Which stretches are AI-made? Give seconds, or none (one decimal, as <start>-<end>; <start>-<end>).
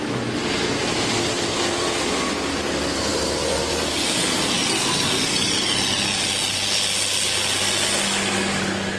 none